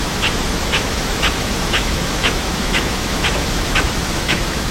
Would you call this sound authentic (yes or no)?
no